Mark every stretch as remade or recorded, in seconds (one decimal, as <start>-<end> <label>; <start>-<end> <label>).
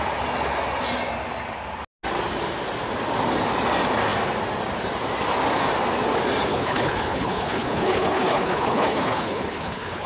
0.0-6.5 recorded; 6.5-10.1 remade